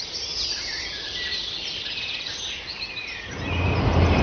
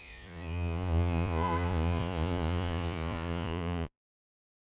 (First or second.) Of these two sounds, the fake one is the second